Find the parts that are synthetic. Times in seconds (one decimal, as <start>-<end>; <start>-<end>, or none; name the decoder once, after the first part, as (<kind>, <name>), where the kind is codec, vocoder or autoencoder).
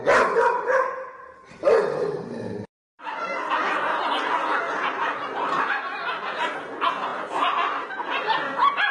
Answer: none